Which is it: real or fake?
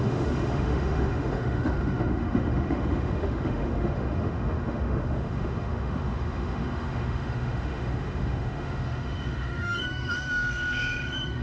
fake